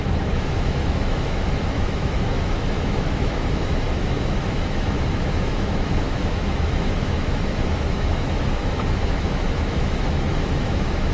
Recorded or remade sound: remade